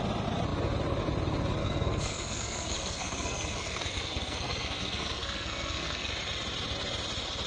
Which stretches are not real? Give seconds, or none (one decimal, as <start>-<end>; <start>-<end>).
1.6-6.1